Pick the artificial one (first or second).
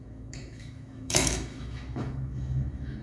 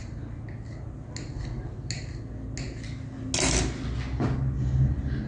first